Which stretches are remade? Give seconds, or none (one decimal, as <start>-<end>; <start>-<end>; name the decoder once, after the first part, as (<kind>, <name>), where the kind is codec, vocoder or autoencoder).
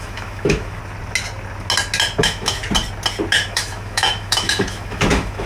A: 0.0-0.8 (autoencoder, DAC-VAE); 2.2-2.6; 3.3-5.5